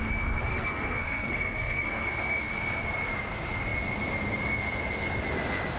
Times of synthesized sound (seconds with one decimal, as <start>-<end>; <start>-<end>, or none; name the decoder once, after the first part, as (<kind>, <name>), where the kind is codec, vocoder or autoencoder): 0.5-2.5 (codec, SNAC)